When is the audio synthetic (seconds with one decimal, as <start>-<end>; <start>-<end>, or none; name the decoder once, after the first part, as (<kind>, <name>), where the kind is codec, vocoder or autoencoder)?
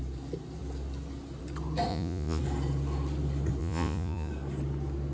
1.9-2.4 (vocoder, Vocos); 3.6-4.3